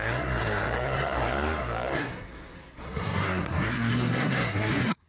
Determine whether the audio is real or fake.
fake